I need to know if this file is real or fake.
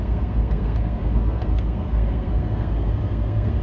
fake